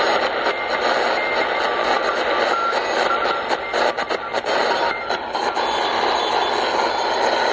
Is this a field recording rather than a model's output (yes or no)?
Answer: yes